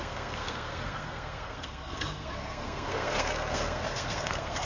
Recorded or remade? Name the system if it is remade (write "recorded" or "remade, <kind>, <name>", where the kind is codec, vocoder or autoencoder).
remade, codec, SNAC